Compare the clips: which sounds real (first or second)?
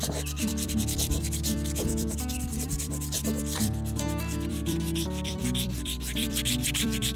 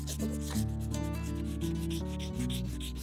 second